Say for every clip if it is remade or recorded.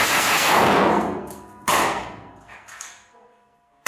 remade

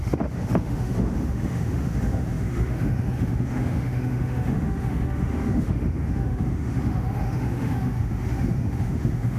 remade